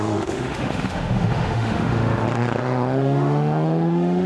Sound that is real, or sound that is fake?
fake